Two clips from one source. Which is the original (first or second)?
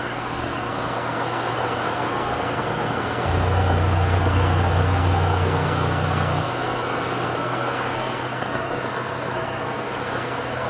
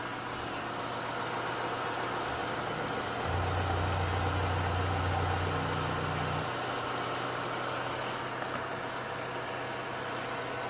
second